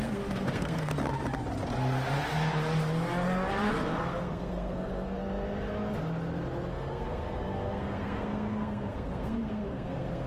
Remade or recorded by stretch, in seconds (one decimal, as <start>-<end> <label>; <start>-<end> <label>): 0.0-0.9 remade; 0.9-3.7 recorded; 3.7-5.2 remade; 5.2-6.7 recorded; 6.7-10.3 remade